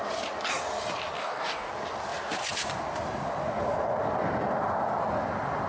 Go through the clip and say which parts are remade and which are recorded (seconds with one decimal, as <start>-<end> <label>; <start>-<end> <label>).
0.0-1.2 recorded; 1.2-1.7 remade; 1.7-5.7 recorded